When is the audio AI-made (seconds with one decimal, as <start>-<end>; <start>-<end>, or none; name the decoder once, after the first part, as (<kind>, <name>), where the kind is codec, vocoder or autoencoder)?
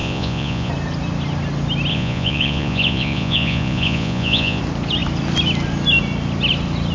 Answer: 0.0-0.7 (vocoder, Vocos); 1.9-4.6